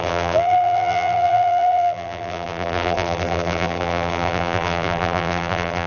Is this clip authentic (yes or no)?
no